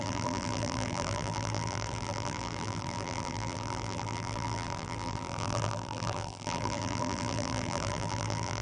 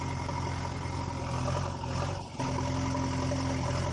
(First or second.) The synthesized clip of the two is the first